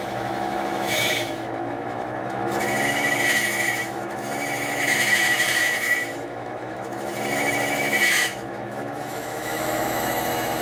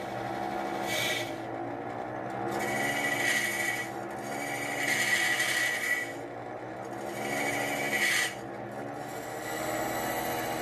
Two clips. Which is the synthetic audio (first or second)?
first